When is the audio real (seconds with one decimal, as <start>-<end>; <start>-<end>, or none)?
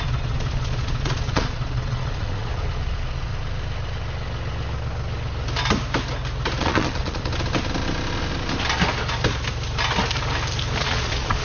3.3-6.6; 7.3-10.8